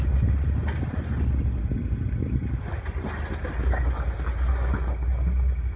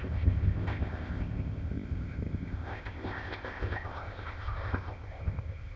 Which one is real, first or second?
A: first